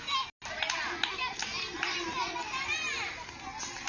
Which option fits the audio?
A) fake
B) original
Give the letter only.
B